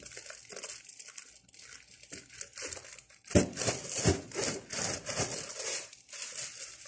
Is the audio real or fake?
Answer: real